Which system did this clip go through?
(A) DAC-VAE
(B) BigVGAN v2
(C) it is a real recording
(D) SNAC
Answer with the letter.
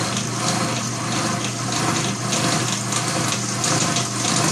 C